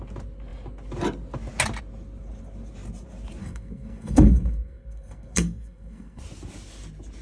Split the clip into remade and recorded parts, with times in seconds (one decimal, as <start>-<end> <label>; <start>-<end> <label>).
0.0-3.4 recorded; 3.4-6.2 remade; 6.2-7.2 recorded